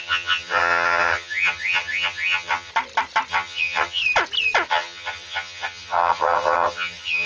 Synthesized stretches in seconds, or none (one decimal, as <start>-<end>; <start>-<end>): 0.0-2.7; 3.3-4.0; 4.7-7.3